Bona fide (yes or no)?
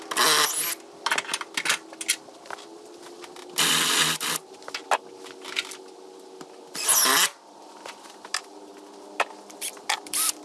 yes